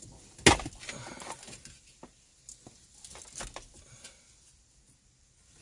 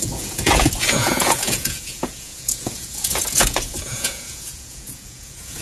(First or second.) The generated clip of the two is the second